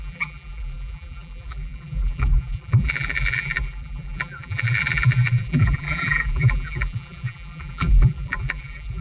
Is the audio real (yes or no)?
no